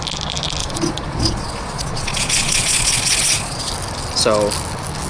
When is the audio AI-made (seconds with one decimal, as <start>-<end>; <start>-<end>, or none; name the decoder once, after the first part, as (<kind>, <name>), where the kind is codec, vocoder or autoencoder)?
0.6-3.7 (vocoder, Vocos)